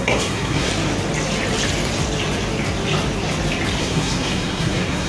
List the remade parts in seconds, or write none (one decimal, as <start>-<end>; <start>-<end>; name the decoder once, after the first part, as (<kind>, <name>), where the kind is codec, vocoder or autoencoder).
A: 0.0-0.7 (codec, SNAC); 3.8-5.1